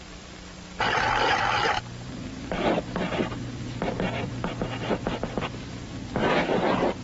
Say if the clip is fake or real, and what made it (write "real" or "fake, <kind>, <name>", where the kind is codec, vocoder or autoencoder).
fake, vocoder, BigVGAN v2